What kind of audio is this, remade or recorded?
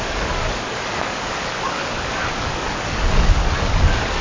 remade